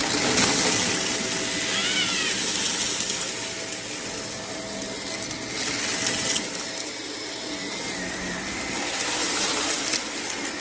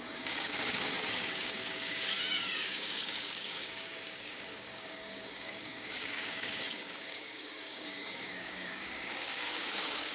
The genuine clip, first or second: first